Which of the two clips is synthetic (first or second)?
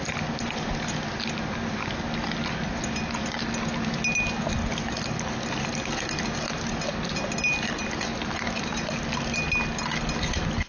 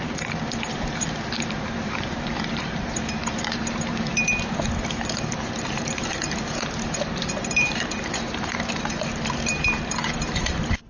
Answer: second